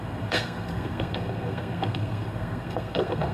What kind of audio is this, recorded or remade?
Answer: remade